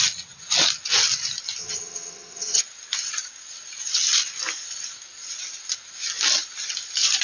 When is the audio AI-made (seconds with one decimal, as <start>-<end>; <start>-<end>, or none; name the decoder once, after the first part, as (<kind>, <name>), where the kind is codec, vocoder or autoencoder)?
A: 1.6-2.6 (vocoder, HiFi-GAN)